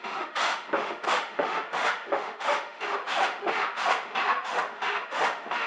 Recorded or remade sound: remade